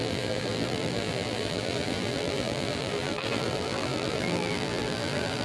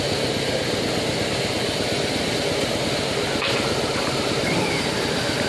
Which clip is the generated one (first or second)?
first